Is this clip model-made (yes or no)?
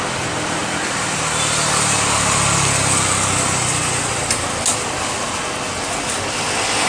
no